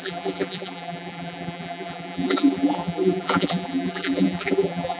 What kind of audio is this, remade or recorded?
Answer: remade